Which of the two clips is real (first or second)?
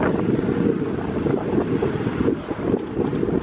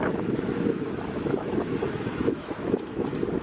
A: first